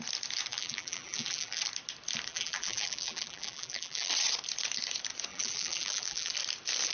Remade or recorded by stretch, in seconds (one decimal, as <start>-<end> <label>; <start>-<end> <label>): 0.0-0.5 recorded; 0.5-1.6 remade; 1.6-2.3 recorded; 2.3-4.1 remade; 4.1-5.3 recorded; 5.3-6.3 remade; 6.3-6.9 recorded